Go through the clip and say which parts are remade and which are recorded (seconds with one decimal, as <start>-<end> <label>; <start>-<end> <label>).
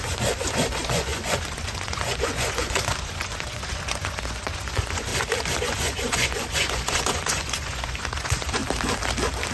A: 0.0-5.1 remade; 5.1-5.6 recorded; 5.6-8.6 remade; 8.6-9.5 recorded